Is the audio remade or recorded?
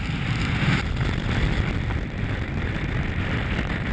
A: recorded